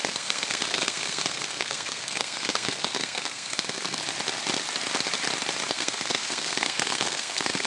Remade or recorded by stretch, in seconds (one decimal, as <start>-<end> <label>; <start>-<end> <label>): 0.0-4.0 remade; 4.0-5.7 recorded; 5.7-7.7 remade